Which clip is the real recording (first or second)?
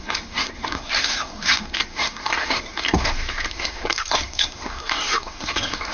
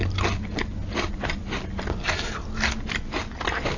second